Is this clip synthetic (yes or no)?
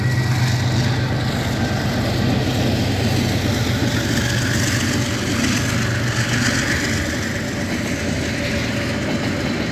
no